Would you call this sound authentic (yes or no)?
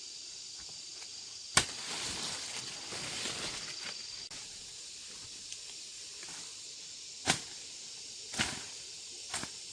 yes